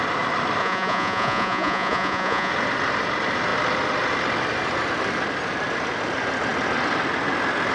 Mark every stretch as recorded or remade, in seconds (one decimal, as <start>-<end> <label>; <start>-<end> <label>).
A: 0.0-0.6 recorded; 0.6-2.5 remade; 2.5-7.7 recorded